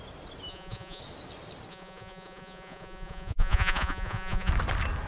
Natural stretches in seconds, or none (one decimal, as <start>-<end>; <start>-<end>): 0.0-0.5; 1.0-1.7; 4.5-5.1